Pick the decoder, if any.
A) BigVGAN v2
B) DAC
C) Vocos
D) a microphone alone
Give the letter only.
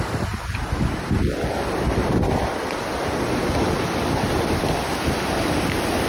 A